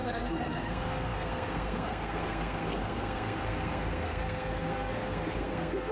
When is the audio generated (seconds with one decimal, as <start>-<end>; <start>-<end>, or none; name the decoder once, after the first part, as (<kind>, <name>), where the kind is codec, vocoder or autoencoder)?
0.0-5.9 (codec, SNAC)